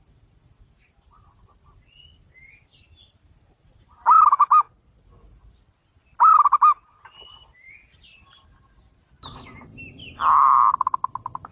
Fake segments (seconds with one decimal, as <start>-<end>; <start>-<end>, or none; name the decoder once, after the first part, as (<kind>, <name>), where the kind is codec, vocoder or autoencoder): none